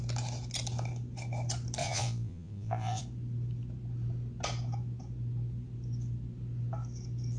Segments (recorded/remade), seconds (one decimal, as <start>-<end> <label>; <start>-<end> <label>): 0.0-1.8 recorded; 1.8-3.0 remade; 3.0-7.4 recorded